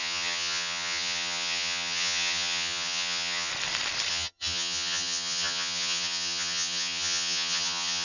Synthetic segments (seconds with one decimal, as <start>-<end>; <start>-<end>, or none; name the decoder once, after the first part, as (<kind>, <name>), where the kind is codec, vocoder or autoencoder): 0.0-3.5 (vocoder, HiFi-GAN); 4.1-8.0